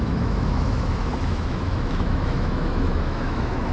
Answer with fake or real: fake